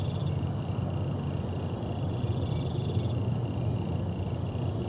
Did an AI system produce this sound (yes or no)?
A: no